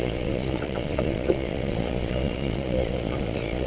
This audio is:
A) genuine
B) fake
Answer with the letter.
B